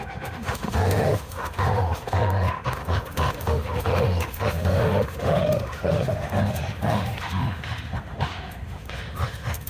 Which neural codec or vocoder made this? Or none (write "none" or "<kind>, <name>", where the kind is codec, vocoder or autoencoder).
autoencoder, DAC-VAE